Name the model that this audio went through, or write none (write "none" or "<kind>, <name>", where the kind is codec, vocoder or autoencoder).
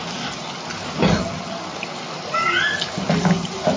none